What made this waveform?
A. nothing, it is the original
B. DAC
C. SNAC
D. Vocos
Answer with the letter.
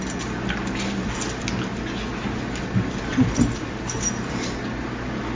A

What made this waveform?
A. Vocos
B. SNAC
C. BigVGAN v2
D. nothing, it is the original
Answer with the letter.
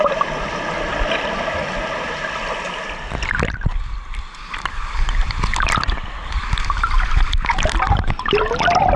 D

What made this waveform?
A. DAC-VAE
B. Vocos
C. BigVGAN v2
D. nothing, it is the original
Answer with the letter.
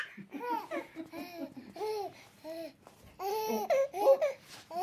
D